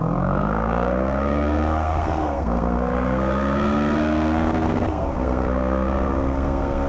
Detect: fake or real fake